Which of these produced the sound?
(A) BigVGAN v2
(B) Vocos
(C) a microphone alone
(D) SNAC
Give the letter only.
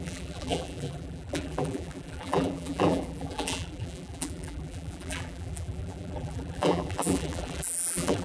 A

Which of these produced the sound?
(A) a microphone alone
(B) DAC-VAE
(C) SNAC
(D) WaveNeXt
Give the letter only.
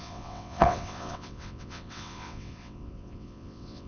D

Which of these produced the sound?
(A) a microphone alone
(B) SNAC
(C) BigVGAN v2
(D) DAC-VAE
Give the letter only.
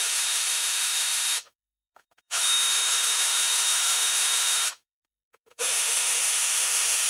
D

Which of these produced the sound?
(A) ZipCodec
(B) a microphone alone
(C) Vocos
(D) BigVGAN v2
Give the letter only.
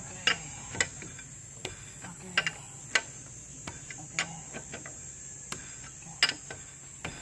B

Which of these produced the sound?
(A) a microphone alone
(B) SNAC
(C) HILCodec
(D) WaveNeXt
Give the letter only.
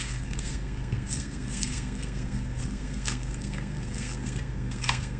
B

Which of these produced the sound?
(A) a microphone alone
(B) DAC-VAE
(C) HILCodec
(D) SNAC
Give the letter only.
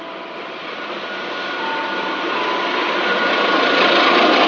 A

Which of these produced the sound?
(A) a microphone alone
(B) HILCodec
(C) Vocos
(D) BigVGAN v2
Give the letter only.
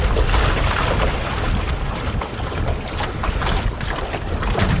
A